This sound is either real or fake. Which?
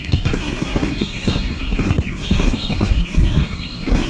fake